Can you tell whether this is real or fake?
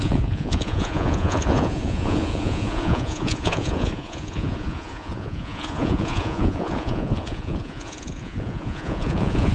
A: fake